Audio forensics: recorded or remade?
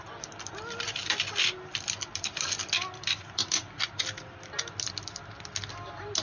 recorded